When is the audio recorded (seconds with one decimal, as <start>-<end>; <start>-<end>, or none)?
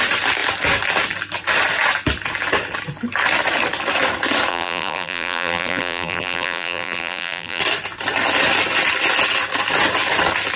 0.0-4.5; 7.6-10.6